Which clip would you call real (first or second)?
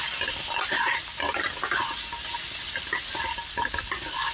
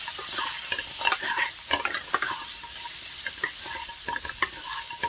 first